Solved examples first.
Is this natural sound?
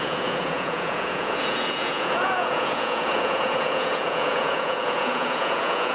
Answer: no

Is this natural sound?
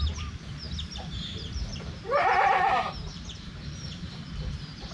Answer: no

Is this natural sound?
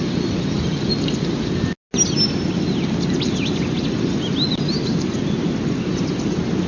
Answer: yes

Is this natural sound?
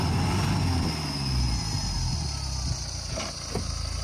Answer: yes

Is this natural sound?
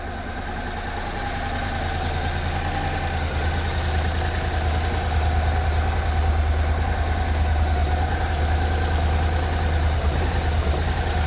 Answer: yes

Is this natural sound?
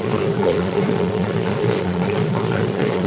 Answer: no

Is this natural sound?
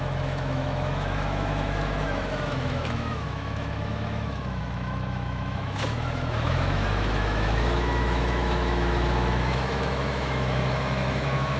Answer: no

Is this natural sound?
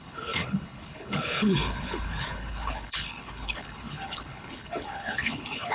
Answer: no